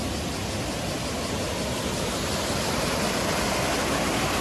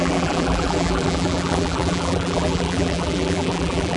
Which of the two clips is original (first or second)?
first